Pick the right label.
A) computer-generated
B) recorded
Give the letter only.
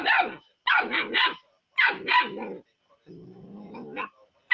B